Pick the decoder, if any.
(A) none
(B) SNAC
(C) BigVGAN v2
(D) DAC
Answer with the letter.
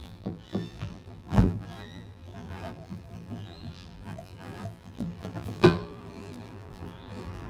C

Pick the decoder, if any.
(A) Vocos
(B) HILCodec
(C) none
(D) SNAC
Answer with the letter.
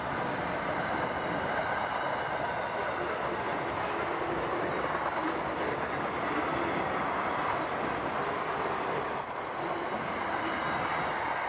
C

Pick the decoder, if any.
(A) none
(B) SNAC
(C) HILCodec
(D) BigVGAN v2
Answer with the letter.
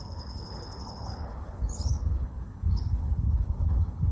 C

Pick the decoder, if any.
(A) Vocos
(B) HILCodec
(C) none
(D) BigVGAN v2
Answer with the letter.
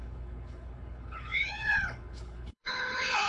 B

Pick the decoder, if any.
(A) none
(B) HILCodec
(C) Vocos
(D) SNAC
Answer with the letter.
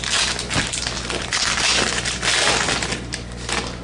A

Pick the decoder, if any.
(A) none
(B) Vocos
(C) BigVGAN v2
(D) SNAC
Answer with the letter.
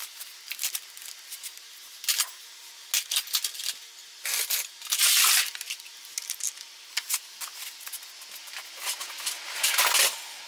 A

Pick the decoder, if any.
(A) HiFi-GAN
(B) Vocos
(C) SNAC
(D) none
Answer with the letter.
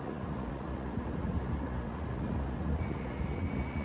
B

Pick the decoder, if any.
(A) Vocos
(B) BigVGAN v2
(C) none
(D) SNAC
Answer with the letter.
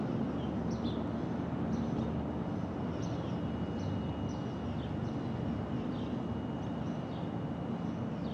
C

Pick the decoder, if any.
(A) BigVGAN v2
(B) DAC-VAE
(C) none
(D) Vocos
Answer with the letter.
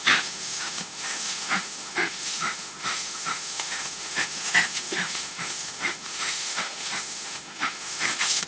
B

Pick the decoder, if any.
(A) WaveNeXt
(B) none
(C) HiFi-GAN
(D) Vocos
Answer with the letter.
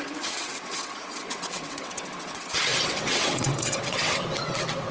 A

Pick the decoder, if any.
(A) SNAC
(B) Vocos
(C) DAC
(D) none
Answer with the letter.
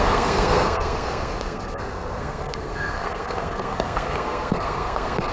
A